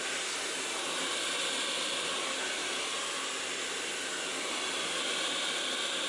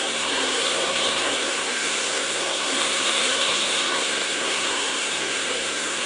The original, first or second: first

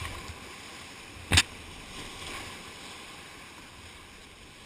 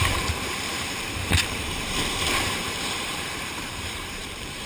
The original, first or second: first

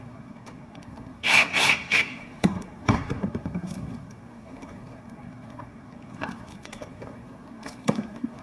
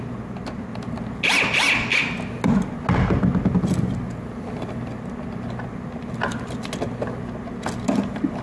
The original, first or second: second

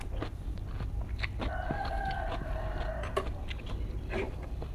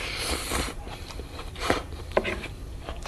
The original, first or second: first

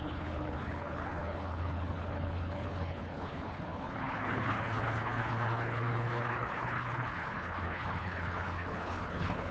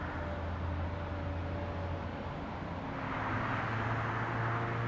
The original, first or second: second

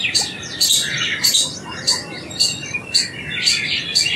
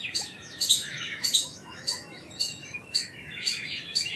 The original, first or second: first